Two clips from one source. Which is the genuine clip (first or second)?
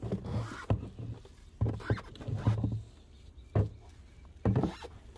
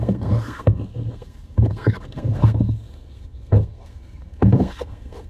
first